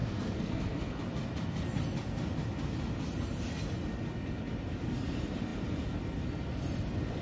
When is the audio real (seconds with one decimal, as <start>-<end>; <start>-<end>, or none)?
1.0-7.2